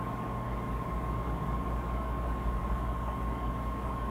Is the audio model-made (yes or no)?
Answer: yes